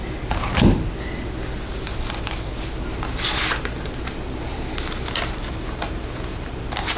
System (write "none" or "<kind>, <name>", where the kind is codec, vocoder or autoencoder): none